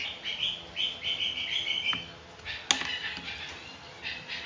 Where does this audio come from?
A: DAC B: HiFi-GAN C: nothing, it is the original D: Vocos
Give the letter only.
C